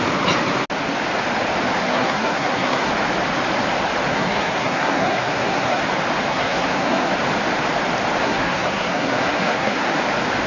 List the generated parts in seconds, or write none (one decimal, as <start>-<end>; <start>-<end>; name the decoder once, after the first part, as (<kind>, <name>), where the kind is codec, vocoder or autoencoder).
1.8-2.9 (codec, SNAC); 4.1-5.8; 6.3-7.1; 8.2-10.0